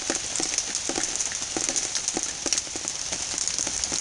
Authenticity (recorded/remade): recorded